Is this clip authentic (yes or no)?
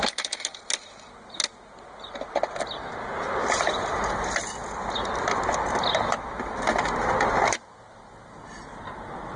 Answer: yes